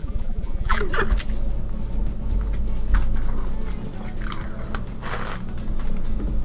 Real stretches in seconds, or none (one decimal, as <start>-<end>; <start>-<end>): 0.8-6.4